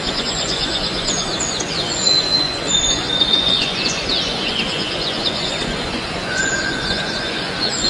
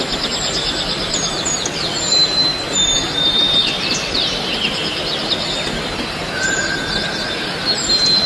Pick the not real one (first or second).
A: first